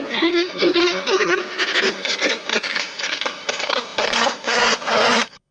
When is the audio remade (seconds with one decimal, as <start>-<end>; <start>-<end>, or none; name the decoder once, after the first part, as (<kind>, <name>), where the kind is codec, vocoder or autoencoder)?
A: 0.0-1.4 (codec, SNAC); 1.9-5.5